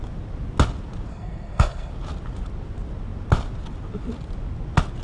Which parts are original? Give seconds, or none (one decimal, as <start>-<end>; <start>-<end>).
0.0-1.1; 1.9-5.0